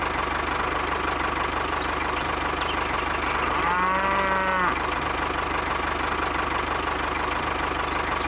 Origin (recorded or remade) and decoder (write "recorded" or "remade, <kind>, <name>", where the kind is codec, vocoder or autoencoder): recorded